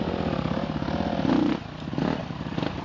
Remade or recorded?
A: recorded